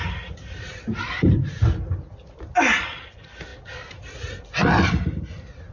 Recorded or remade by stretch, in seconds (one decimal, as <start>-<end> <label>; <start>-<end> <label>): 0.0-5.7 recorded